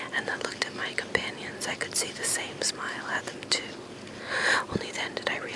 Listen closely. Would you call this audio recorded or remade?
recorded